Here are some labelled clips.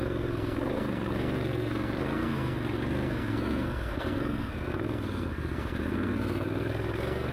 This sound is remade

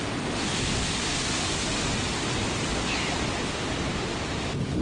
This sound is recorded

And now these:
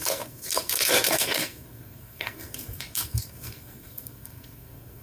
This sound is remade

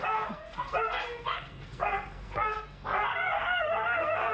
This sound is remade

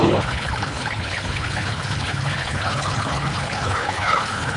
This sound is remade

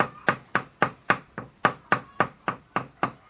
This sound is recorded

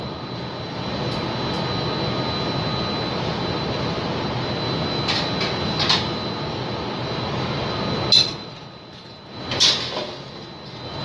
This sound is recorded